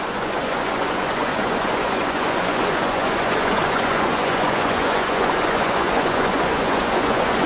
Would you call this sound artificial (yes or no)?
yes